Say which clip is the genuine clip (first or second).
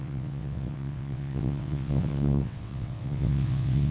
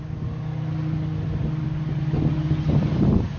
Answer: second